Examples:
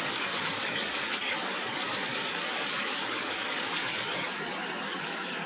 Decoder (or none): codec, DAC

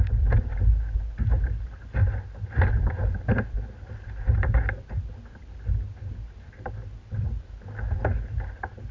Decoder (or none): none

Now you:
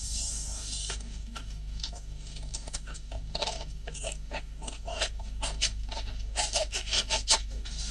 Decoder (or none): codec, DAC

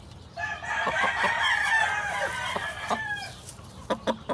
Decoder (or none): none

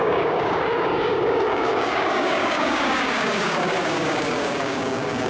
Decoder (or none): codec, DAC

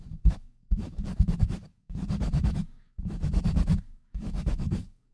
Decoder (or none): codec, DAC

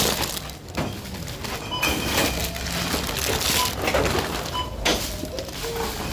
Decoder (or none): none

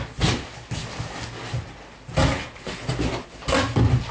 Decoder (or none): none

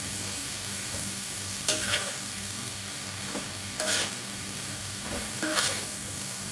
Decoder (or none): codec, DAC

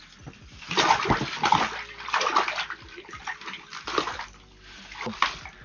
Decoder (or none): none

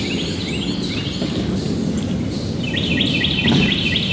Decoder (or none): none